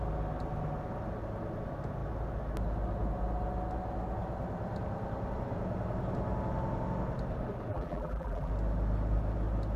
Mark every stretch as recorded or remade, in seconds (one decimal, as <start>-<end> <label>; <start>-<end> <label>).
0.0-7.7 recorded; 7.7-8.5 remade; 8.5-9.8 recorded